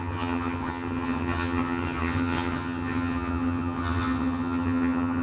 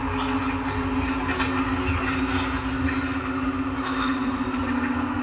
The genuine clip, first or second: second